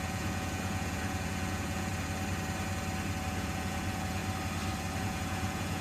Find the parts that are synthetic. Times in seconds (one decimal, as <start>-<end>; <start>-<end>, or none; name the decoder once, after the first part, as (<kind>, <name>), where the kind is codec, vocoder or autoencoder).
0.0-1.9 (vocoder, Vocos); 3.3-4.2; 5.0-5.8